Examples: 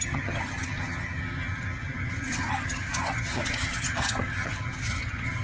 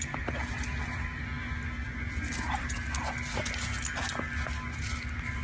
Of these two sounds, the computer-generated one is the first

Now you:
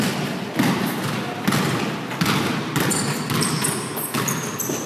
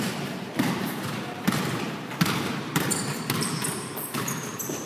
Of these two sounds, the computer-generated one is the second